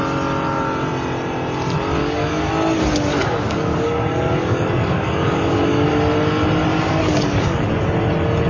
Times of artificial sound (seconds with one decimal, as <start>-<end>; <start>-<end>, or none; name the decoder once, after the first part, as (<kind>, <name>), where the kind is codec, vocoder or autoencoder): 2.0-2.5 (codec, DAC); 3.2-5.9; 6.7-7.8